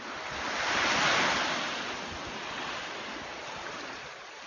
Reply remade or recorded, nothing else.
recorded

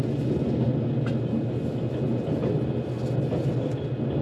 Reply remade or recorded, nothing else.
recorded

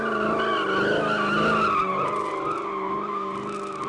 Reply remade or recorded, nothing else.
recorded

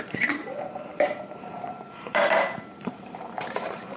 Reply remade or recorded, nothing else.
remade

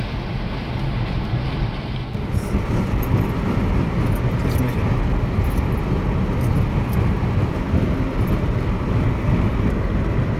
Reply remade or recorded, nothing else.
recorded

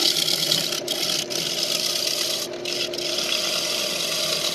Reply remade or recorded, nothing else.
recorded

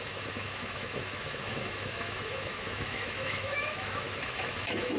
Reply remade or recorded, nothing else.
remade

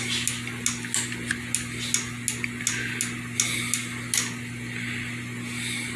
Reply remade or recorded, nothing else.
recorded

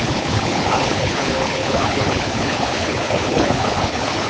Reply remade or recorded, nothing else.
remade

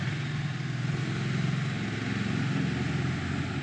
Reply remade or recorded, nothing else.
recorded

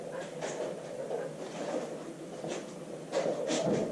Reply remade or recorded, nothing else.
recorded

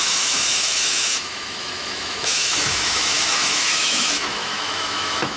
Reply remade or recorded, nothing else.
remade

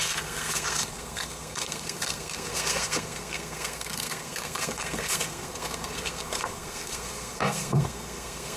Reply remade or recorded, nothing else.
remade